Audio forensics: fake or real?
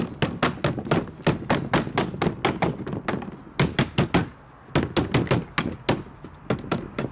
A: real